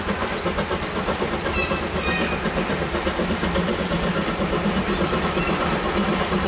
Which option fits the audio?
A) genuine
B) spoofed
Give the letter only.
A